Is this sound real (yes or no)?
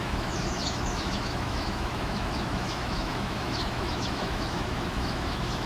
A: no